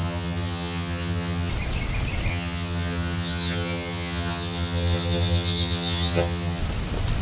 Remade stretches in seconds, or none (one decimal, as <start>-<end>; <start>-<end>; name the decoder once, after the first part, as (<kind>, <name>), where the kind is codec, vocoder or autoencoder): 0.0-1.5 (vocoder, HiFi-GAN); 2.3-6.6